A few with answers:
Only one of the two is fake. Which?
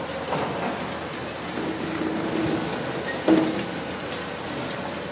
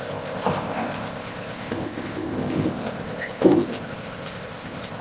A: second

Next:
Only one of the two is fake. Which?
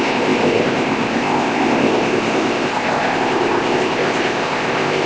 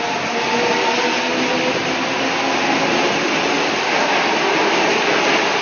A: first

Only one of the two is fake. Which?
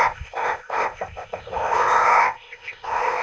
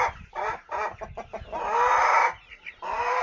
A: first